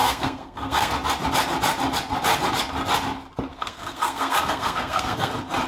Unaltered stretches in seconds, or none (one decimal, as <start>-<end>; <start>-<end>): 0.9-3.5; 5.3-5.7